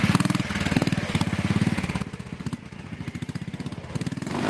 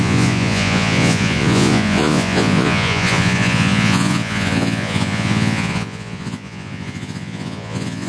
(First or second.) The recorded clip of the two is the first